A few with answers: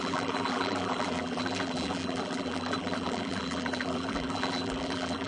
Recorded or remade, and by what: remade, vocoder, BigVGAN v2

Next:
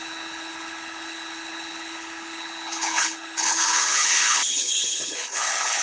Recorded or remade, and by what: remade, codec, HILCodec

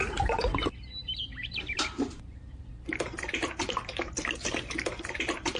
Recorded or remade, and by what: remade, vocoder, BigVGAN v2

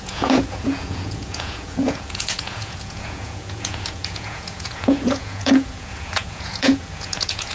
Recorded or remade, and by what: remade, vocoder, Vocos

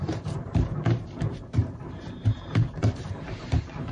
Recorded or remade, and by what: remade, vocoder, BigVGAN v2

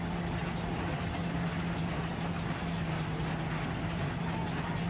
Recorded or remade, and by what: recorded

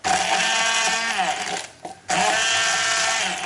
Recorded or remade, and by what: recorded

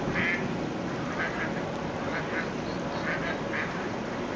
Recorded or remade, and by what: recorded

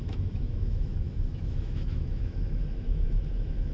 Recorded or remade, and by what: remade, autoencoder, DAC-VAE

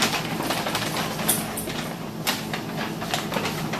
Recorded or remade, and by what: recorded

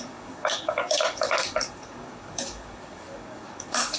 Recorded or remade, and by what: remade, codec, DAC